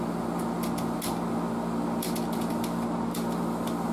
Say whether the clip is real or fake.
real